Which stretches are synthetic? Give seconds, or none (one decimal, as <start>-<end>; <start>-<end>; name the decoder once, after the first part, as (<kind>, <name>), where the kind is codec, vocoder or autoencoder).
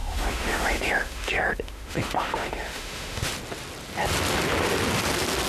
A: 0.0-3.3 (autoencoder, DAC-VAE)